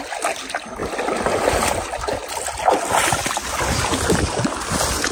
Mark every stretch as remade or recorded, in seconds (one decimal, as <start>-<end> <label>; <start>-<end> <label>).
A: 0.0-5.1 recorded